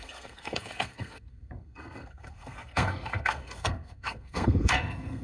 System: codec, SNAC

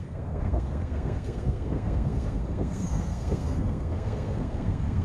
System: codec, SNAC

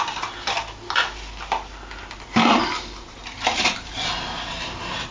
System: none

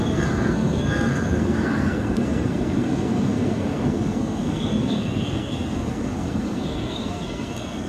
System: codec, SNAC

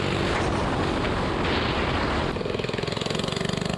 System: none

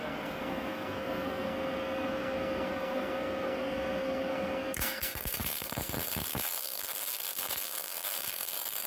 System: codec, SNAC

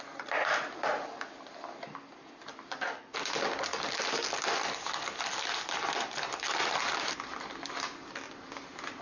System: none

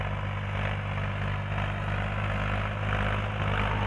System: none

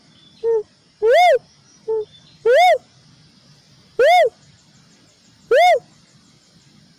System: none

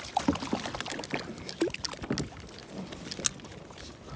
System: none